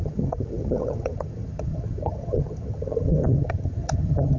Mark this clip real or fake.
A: fake